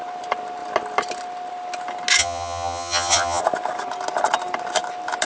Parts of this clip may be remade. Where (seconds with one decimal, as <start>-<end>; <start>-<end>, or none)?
2.2-3.4